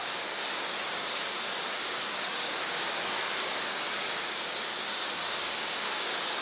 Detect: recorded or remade remade